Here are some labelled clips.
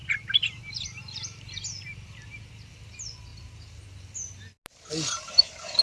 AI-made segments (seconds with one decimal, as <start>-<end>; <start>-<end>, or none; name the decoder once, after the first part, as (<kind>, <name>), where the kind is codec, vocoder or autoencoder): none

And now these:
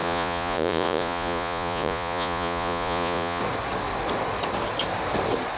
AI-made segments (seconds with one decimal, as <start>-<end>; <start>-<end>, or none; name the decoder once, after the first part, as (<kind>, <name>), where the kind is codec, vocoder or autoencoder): 0.0-3.4 (vocoder, Vocos)

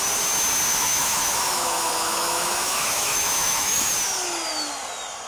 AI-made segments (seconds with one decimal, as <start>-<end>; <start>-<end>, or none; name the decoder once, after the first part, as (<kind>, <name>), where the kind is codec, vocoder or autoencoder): 0.7-3.9 (autoencoder, DAC-VAE)

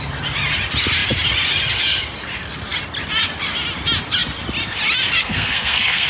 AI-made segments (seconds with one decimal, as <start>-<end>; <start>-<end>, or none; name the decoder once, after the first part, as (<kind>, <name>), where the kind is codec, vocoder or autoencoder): 5.2-6.1 (codec, SNAC)